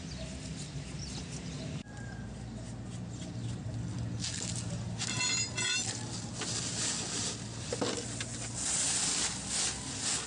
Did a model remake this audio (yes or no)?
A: no